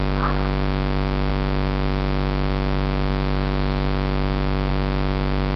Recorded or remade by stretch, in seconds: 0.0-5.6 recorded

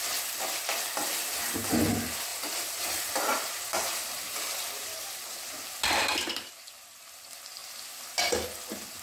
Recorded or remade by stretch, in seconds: 0.0-2.3 recorded; 2.3-6.5 remade; 6.5-9.0 recorded

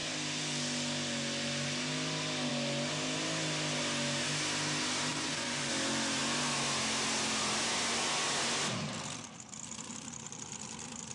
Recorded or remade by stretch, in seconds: 0.0-5.1 recorded; 5.1-5.7 remade; 5.7-11.1 recorded

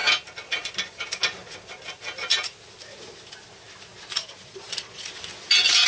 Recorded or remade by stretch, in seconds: 0.0-4.2 recorded; 4.2-5.1 remade; 5.1-5.9 recorded